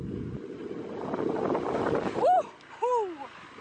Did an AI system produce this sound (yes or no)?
no